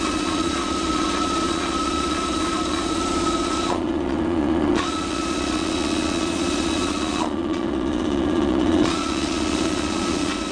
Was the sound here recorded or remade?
remade